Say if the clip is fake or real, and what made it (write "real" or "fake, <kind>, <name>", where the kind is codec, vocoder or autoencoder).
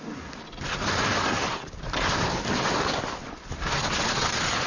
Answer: real